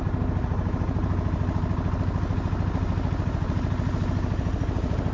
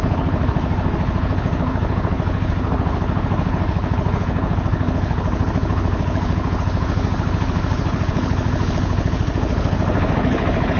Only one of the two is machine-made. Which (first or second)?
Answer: second